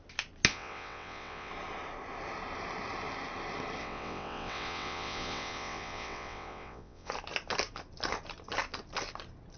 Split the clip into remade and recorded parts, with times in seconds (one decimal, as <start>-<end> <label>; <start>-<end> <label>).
0.0-0.5 recorded; 0.5-1.5 remade; 1.5-3.8 recorded; 3.8-7.1 remade; 7.1-9.6 recorded